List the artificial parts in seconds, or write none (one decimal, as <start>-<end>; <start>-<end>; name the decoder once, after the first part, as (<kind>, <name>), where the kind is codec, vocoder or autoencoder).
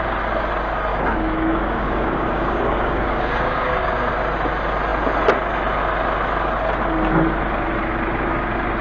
0.9-4.1 (codec, DAC)